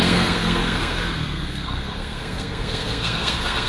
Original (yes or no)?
no